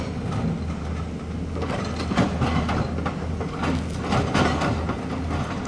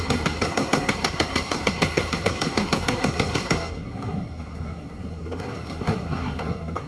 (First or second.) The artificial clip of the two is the second